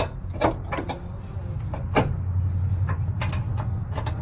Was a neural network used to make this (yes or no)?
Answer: no